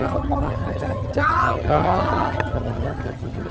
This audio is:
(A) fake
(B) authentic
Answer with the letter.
A